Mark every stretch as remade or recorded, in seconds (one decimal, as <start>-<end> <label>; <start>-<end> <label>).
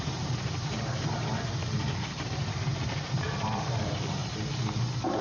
0.0-4.2 remade; 4.2-5.2 recorded